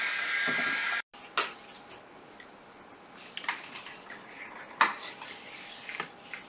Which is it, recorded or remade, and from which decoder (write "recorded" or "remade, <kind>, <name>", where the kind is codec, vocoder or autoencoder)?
recorded